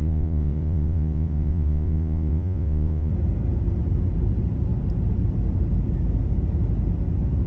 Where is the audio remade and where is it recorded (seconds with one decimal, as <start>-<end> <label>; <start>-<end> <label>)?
0.0-3.1 remade; 3.1-7.5 recorded